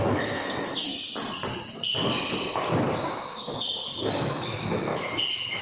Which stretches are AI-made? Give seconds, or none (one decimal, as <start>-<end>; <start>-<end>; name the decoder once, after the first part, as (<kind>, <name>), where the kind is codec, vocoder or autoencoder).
0.0-0.9 (autoencoder, DAC-VAE); 3.1-3.5; 4.2-4.9